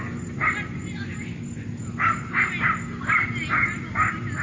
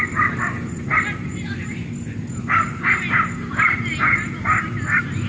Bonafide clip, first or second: first